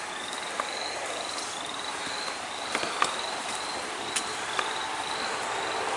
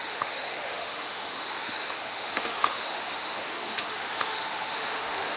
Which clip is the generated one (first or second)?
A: second